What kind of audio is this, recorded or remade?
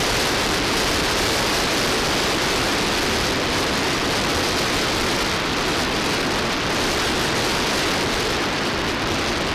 recorded